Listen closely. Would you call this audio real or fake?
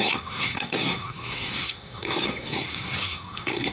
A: fake